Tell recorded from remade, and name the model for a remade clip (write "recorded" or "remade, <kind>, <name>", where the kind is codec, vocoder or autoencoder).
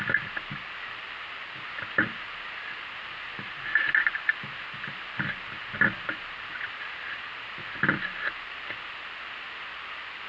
recorded